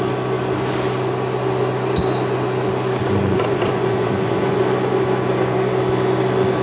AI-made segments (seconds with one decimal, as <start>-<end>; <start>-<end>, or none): 3.2-4.6